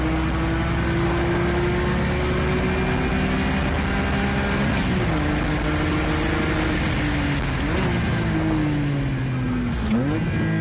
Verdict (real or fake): real